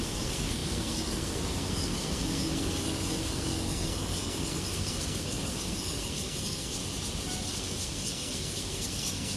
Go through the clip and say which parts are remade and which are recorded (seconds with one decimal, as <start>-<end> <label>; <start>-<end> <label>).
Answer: 0.0-6.8 remade; 6.8-7.4 recorded; 7.4-9.4 remade